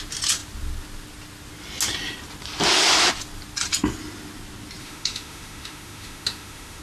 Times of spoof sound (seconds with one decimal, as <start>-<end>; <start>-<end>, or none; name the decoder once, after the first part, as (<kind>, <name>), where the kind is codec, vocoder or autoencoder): 4.8-6.8 (autoencoder, DAC-VAE)